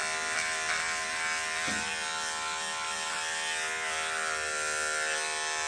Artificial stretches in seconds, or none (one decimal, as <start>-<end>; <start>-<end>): none